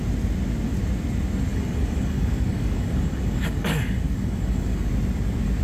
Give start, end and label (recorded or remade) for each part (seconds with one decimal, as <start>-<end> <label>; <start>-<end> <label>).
0.0-1.5 recorded; 1.5-4.9 remade; 4.9-5.6 recorded